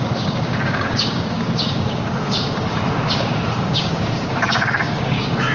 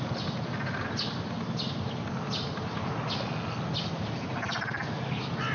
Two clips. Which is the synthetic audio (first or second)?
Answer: first